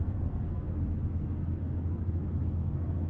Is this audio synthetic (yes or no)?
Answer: yes